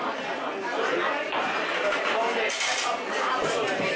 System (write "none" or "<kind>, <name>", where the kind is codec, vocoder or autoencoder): none